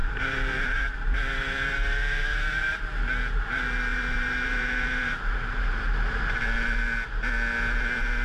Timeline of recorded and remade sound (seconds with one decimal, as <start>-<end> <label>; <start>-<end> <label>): 0.0-2.8 remade; 2.8-3.9 recorded; 3.9-5.7 remade; 5.7-8.2 recorded